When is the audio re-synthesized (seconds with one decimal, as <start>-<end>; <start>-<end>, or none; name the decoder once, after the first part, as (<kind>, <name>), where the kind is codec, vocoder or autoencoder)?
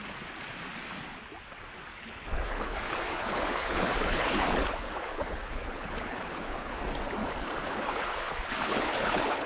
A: 1.9-6.8 (codec, HILCodec); 7.2-9.5